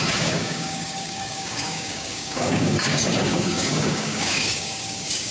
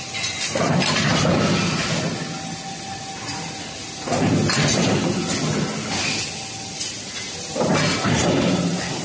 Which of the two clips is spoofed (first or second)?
first